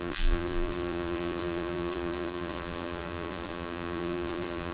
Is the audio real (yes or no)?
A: no